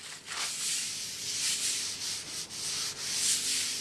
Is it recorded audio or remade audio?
recorded